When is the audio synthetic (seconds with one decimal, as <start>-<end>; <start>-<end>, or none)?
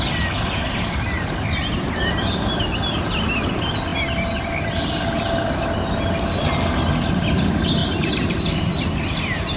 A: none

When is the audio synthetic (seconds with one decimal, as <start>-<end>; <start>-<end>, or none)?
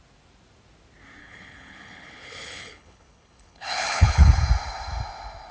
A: 1.2-4.4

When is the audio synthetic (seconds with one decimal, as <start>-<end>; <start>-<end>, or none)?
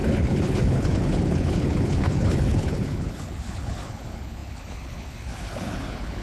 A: 0.0-6.2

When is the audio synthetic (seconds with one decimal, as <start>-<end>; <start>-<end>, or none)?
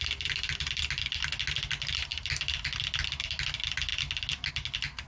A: none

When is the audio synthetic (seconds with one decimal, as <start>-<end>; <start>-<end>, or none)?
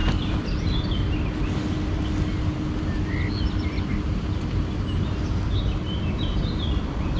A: none